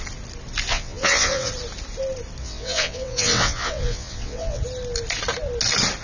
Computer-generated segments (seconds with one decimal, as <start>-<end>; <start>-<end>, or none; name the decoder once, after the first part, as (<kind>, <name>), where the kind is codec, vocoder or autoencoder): 0.7-1.5 (vocoder, WaveNeXt); 2.4-4.6